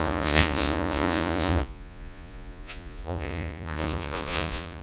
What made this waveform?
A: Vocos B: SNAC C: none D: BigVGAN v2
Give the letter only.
A